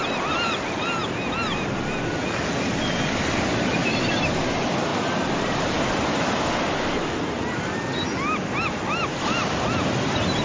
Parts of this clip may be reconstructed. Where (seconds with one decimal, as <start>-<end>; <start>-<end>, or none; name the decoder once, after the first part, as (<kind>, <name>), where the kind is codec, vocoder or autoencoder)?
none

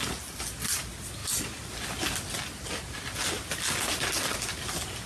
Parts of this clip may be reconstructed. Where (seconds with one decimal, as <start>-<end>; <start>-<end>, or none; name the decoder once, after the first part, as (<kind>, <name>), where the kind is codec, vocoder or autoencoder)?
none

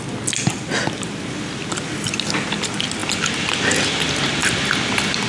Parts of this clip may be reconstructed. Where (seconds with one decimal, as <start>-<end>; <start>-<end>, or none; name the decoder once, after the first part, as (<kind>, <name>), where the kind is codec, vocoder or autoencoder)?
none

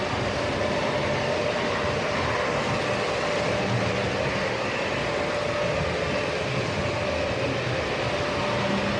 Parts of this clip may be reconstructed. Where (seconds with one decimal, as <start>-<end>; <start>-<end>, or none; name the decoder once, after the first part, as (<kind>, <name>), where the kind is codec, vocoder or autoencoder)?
none